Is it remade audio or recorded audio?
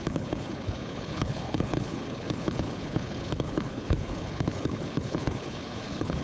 remade